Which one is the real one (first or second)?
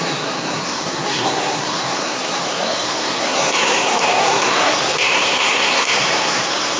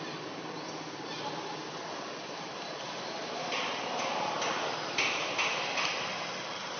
second